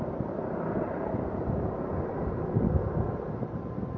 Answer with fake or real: real